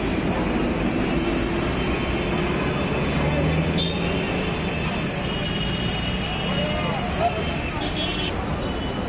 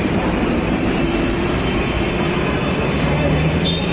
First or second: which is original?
first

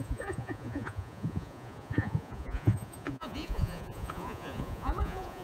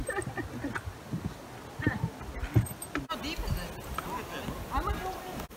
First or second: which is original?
second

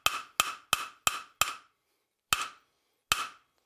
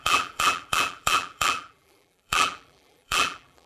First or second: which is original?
first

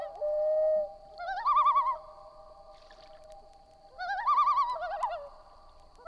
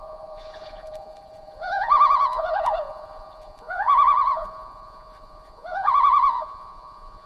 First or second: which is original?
first